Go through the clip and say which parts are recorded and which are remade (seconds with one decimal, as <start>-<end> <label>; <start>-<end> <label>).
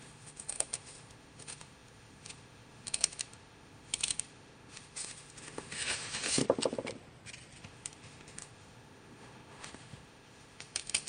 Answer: 0.0-6.4 remade; 6.4-7.6 recorded; 7.6-11.1 remade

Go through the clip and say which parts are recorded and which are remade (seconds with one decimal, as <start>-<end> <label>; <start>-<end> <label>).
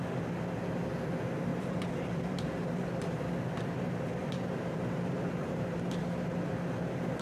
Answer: 0.0-1.5 recorded; 1.5-2.9 remade; 2.9-4.2 recorded; 4.2-6.0 remade; 6.0-7.2 recorded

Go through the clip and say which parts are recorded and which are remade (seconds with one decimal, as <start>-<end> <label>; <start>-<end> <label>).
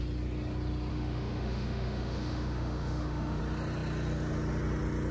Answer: 0.0-0.9 recorded; 0.9-3.4 remade; 3.4-5.1 recorded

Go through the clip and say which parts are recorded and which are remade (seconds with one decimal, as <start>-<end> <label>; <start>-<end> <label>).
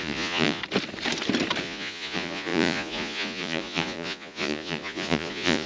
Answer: 0.0-0.6 remade; 0.6-1.6 recorded; 1.6-5.7 remade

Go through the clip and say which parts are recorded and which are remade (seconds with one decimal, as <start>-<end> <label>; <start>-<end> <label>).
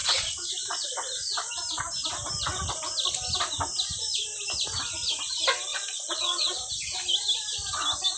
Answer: 0.0-0.5 remade; 0.5-5.7 recorded; 5.7-6.7 remade; 6.7-8.2 recorded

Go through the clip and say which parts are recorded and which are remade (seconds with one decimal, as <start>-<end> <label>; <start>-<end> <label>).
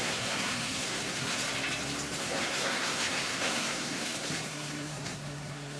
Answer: 0.0-1.4 remade; 1.4-2.2 recorded; 2.2-5.8 remade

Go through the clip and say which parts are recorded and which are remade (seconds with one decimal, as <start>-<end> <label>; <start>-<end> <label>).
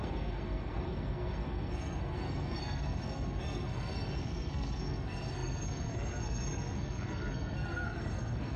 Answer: 0.0-8.6 remade